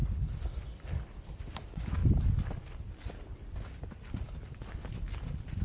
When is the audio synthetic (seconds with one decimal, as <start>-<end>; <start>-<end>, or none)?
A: 1.2-2.0